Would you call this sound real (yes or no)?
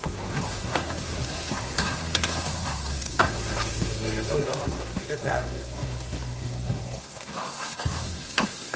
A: no